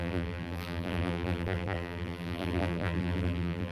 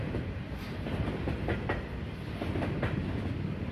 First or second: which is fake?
first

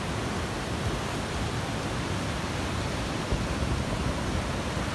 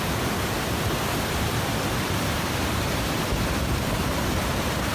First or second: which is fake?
second